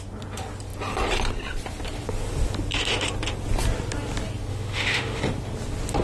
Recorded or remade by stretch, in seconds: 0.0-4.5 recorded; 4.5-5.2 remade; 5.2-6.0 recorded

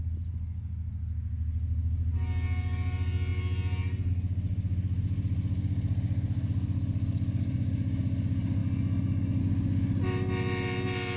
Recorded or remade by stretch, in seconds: 0.0-8.6 recorded; 8.6-9.4 remade; 9.4-11.2 recorded

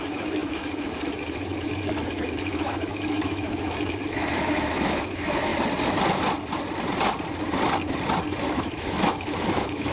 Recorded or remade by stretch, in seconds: 0.0-5.5 remade; 5.5-8.4 recorded; 8.4-9.9 remade

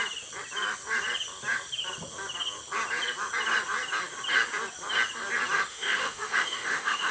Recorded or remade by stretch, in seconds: 0.0-5.7 recorded; 5.7-7.1 remade

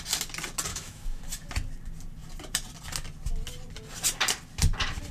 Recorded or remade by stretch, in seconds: 0.0-0.7 recorded; 0.7-1.2 remade; 1.2-5.1 recorded